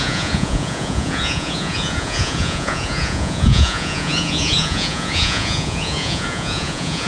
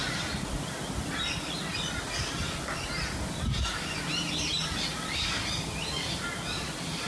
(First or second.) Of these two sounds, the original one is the second